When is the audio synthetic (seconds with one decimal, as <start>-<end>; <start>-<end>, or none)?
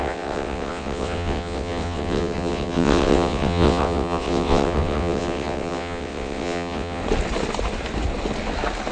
0.0-7.0